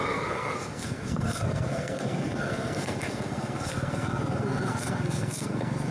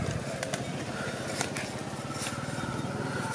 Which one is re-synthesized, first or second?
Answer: first